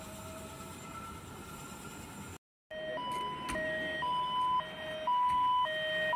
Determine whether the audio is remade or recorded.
recorded